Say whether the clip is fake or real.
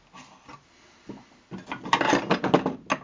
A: real